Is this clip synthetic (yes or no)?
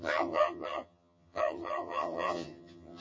yes